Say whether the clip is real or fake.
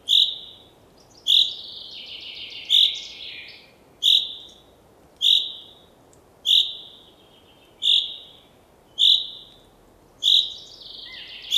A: real